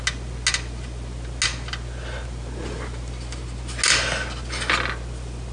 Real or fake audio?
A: real